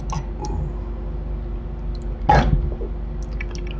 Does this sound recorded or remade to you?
recorded